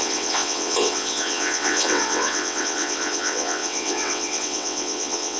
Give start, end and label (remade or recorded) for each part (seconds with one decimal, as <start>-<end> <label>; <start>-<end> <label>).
0.0-5.4 remade